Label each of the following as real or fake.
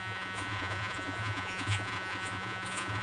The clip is fake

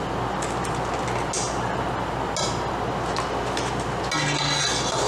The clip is real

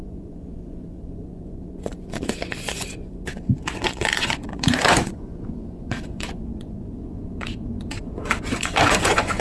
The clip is fake